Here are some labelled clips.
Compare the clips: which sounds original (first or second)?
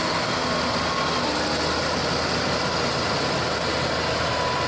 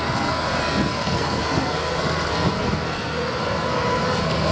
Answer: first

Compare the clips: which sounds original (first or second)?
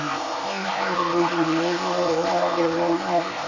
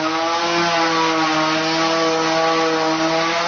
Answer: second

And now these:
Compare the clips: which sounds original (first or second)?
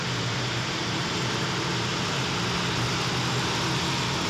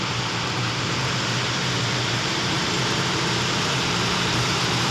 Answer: first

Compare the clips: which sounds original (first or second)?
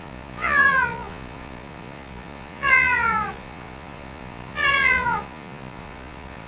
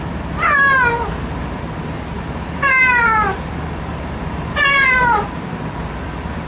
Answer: second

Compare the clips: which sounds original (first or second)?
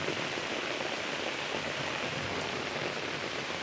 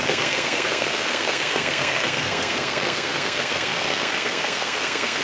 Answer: first